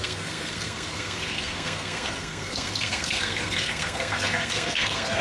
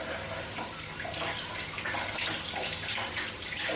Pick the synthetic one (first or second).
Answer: first